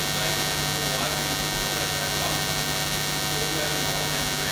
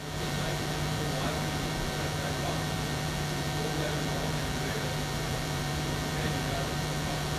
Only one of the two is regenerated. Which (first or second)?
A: second